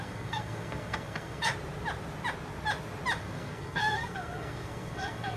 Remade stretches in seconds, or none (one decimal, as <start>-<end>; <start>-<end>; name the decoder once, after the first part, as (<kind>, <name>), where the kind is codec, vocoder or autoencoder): 0.0-1.5 (codec, SNAC); 3.2-5.4